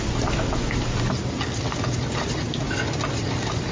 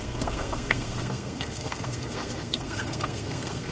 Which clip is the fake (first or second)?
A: second